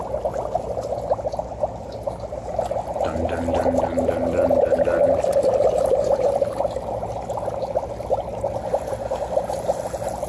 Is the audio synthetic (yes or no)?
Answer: no